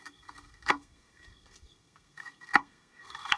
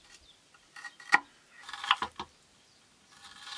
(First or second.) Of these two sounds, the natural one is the second